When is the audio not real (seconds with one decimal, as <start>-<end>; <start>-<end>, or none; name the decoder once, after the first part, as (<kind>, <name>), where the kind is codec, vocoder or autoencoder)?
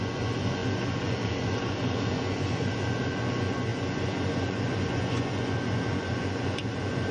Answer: 0.0-7.1 (vocoder, Vocos)